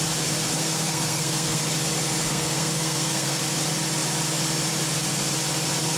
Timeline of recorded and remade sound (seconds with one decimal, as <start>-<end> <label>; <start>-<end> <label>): 0.0-0.5 recorded; 0.5-1.6 remade; 1.6-2.3 recorded; 2.3-3.4 remade; 3.4-6.0 recorded